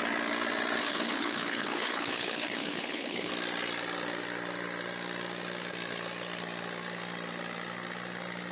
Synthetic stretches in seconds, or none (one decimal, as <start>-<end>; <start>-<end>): 0.8-3.3